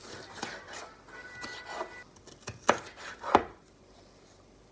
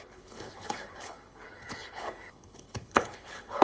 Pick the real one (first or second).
first